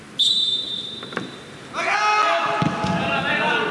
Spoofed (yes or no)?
no